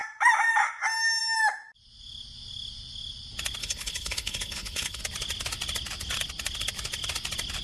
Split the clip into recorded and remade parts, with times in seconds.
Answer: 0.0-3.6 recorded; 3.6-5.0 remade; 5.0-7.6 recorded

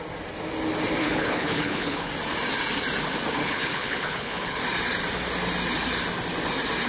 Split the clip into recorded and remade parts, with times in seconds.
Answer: 0.0-1.0 recorded; 1.0-2.1 remade; 2.1-3.4 recorded; 3.4-4.6 remade; 4.6-6.9 recorded

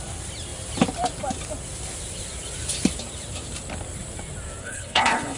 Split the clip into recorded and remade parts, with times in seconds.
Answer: 0.0-4.6 recorded; 4.6-5.4 remade

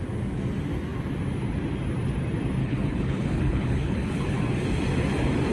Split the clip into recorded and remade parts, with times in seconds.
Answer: 0.0-2.6 recorded; 2.6-4.4 remade; 4.4-5.5 recorded